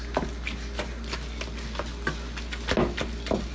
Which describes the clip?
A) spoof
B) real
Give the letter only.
B